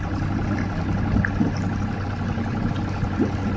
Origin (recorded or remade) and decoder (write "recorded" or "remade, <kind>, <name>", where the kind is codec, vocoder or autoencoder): recorded